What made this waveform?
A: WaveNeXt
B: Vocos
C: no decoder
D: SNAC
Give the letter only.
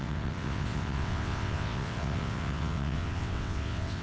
A